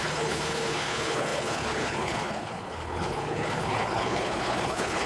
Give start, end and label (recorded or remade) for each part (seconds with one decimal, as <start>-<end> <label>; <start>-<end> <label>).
0.0-5.1 remade